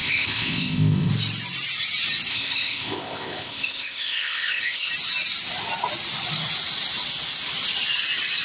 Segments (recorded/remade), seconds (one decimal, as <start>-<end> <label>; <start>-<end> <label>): 0.0-1.1 remade; 1.1-2.3 recorded; 2.3-4.9 remade; 4.9-8.4 recorded